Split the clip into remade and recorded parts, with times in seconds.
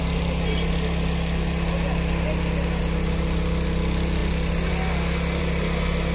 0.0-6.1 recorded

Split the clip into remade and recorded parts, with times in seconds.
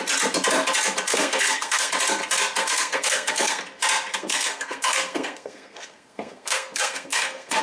0.0-1.1 recorded; 1.1-1.9 remade; 1.9-2.6 recorded; 2.6-3.6 remade; 3.6-4.1 recorded; 4.1-7.6 remade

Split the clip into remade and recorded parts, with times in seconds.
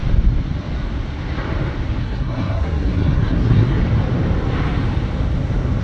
0.0-2.0 recorded; 2.0-3.8 remade; 3.8-5.8 recorded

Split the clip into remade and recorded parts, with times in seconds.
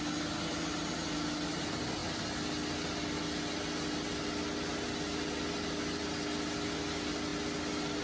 0.0-8.0 recorded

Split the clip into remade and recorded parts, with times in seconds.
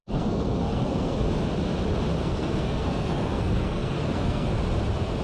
0.0-1.3 remade; 1.3-2.2 recorded; 2.2-4.6 remade; 4.6-5.2 recorded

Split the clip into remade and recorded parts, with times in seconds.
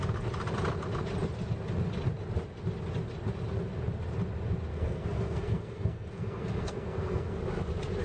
0.0-4.7 recorded; 4.7-7.4 remade; 7.4-8.0 recorded